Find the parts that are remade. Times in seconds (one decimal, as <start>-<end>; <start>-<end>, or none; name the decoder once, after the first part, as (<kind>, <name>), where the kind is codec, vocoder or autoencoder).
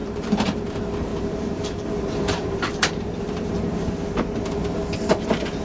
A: 0.0-0.6 (vocoder, BigVGAN v2); 1.1-4.5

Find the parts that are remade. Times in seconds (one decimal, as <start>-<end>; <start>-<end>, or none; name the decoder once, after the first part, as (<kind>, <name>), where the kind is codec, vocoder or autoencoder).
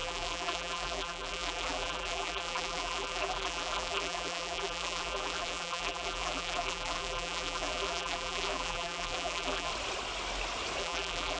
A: 0.0-9.7 (vocoder, BigVGAN v2); 10.8-11.4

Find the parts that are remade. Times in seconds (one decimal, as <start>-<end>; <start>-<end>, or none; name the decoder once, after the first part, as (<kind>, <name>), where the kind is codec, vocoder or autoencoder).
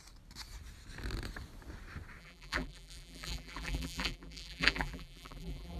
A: 2.2-5.8 (vocoder, BigVGAN v2)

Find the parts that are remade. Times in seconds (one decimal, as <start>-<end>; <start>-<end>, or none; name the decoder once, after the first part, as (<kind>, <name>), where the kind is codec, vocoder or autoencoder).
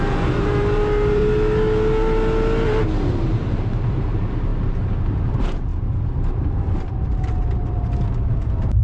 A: 0.0-1.2 (vocoder, BigVGAN v2); 3.1-5.7; 6.3-8.8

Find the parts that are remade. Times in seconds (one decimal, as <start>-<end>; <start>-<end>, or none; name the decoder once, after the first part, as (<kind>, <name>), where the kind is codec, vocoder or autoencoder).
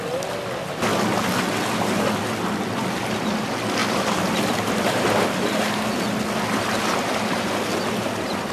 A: none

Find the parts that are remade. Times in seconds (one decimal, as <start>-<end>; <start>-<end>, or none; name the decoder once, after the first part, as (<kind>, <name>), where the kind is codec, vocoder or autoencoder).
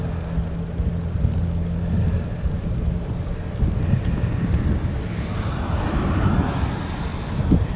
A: 7.1-7.8 (vocoder, BigVGAN v2)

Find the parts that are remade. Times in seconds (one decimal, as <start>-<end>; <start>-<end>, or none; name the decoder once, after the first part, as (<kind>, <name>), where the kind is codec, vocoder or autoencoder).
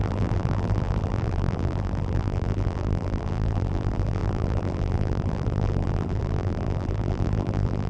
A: 0.0-7.9 (vocoder, BigVGAN v2)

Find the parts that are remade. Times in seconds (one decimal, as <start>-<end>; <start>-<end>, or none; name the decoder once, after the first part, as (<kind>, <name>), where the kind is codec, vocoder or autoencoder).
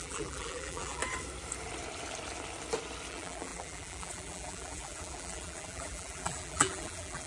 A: 0.0-1.0 (vocoder, BigVGAN v2); 3.1-7.3